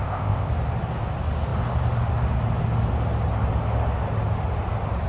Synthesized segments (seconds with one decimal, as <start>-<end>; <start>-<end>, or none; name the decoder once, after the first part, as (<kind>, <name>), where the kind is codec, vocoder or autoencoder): 0.0-0.5 (codec, ZipCodec)

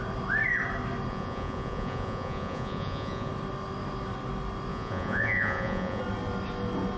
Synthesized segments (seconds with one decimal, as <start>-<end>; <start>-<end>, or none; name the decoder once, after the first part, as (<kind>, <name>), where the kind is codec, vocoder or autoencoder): 1.1-3.3 (vocoder, Vocos); 4.7-6.0